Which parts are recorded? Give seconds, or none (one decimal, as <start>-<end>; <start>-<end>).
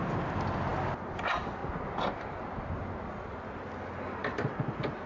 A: 0.0-5.1